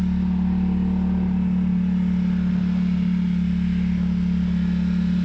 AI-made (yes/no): no